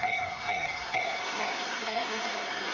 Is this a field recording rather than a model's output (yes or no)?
no